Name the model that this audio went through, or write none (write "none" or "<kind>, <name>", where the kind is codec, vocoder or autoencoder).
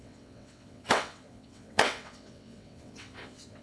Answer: vocoder, WaveNeXt